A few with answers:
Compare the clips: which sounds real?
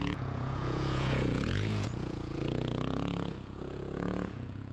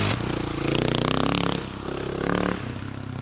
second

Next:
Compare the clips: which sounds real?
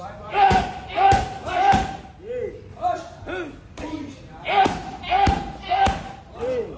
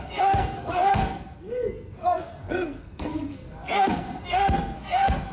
first